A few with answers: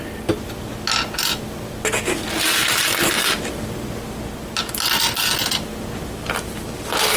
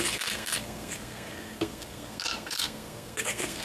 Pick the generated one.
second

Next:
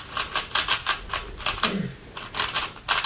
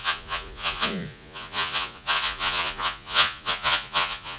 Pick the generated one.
second